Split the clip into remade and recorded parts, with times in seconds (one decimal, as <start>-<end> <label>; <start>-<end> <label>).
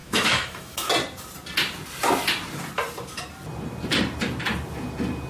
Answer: 0.0-0.9 remade; 0.9-5.3 recorded